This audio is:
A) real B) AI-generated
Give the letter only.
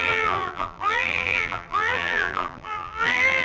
B